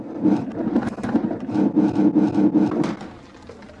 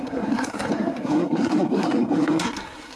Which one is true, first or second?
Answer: first